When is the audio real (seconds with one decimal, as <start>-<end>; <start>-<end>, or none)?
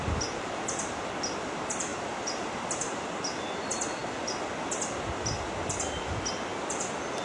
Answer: 0.0-1.9; 3.2-7.2